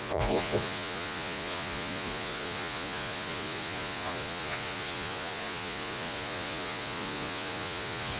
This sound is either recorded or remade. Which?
remade